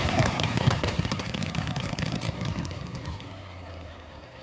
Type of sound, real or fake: fake